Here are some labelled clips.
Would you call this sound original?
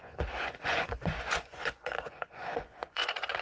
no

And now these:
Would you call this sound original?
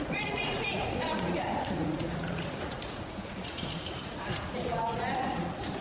no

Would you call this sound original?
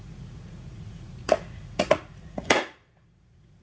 no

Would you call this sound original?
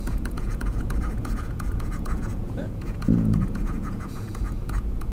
no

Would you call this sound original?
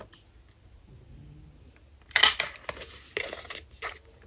yes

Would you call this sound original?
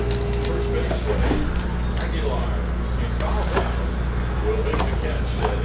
yes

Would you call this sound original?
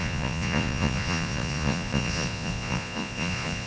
no